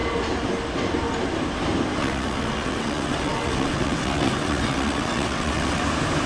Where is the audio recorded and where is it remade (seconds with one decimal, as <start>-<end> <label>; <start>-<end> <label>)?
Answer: 0.0-2.0 recorded; 2.0-5.8 remade; 5.8-6.3 recorded